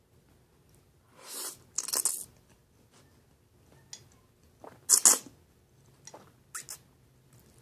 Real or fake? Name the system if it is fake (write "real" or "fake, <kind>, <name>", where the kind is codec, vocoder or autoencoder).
real